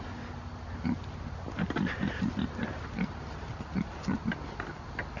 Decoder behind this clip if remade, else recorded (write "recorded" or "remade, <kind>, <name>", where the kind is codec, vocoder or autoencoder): recorded